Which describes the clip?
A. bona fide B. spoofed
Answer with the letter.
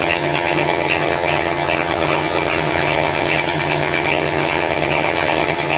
B